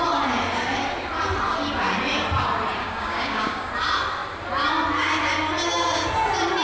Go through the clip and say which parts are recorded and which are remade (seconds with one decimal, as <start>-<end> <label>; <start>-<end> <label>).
0.0-2.8 recorded; 2.8-3.7 remade; 3.7-6.6 recorded